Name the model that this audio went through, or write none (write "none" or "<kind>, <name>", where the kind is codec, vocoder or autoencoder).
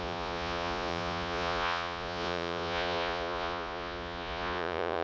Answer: vocoder, Vocos